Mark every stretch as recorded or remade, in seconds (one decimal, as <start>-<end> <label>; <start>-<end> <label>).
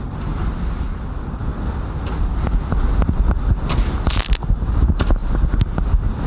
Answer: 0.0-6.3 recorded